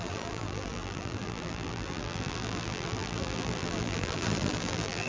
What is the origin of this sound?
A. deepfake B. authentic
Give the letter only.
A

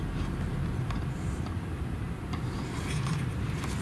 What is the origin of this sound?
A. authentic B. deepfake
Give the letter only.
B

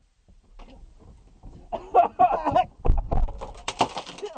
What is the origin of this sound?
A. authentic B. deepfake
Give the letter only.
B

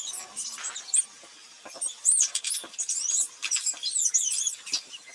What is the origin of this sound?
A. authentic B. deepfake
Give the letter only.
B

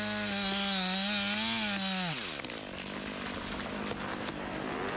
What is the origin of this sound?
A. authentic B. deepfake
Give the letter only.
A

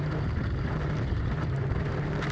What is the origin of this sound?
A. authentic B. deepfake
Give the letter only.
B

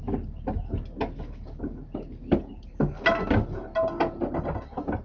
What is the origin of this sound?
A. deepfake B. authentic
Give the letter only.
B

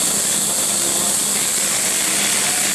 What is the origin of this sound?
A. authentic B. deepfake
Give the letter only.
A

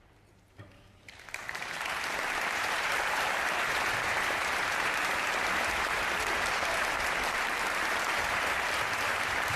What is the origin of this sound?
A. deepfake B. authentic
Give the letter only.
A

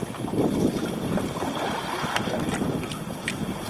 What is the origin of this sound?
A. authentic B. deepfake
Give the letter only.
A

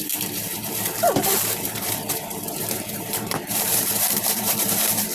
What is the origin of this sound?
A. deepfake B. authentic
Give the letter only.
A